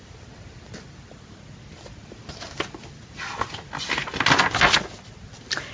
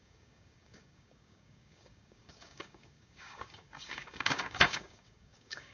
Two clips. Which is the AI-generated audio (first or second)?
second